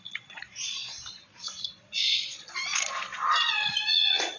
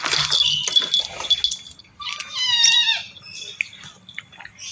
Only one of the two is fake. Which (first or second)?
first